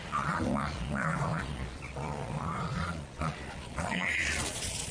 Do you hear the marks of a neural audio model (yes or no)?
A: yes